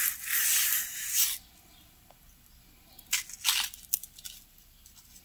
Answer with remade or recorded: recorded